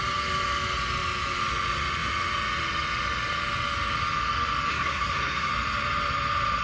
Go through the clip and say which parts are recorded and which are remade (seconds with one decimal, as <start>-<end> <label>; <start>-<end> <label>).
0.0-4.7 recorded; 4.7-5.5 remade; 5.5-6.6 recorded

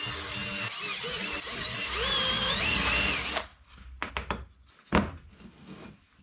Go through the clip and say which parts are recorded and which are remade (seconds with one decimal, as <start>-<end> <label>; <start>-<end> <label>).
0.0-6.2 recorded

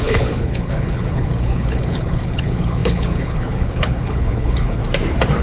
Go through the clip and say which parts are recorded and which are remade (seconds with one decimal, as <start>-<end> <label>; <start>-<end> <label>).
0.0-4.8 remade; 4.8-5.4 recorded